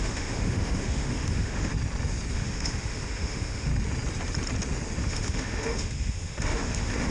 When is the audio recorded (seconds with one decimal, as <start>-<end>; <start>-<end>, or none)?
1.7-2.3; 3.7-5.0